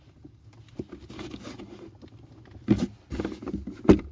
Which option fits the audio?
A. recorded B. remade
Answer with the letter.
A